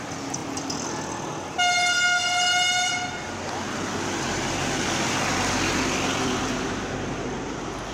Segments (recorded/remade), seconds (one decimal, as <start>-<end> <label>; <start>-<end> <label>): 0.0-7.9 recorded